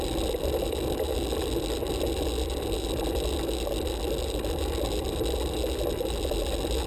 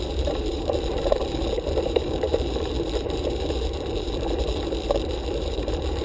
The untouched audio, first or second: first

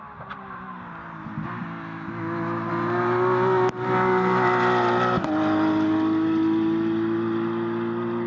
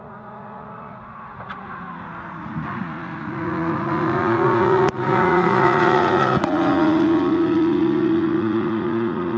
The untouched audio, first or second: first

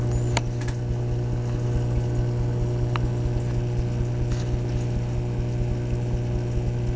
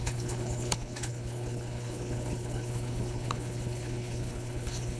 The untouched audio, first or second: first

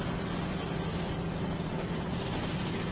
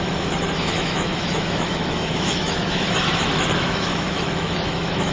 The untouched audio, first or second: first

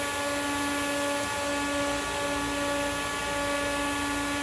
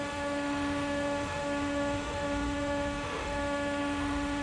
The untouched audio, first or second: first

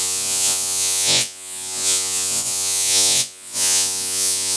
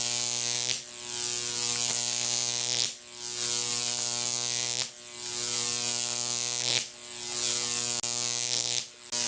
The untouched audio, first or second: second